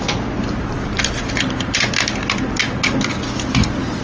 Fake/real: real